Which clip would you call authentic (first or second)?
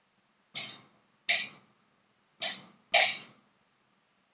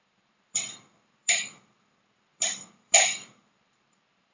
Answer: first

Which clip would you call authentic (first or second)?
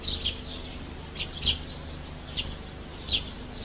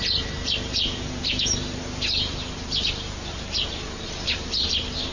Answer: first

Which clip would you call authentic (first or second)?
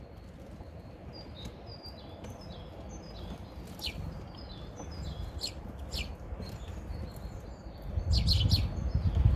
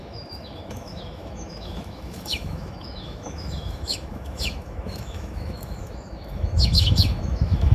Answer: first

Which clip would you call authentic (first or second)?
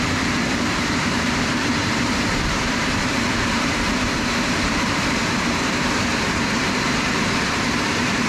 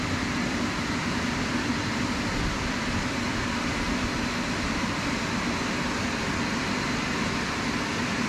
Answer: second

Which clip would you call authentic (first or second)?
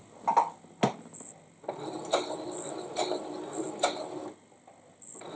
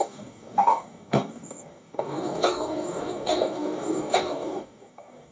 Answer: first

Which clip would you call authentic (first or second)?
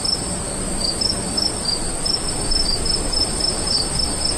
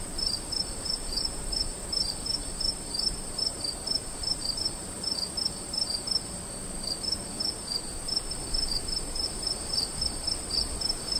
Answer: first